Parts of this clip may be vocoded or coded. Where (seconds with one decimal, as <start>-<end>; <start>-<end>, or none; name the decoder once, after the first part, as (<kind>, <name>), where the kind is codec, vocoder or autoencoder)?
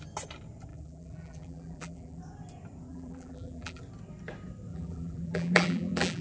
0.7-2.2 (vocoder, BigVGAN v2); 2.9-3.8; 4.7-6.2